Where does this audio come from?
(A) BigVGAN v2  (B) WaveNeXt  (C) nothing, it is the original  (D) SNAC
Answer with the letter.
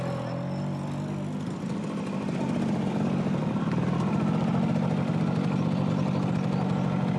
C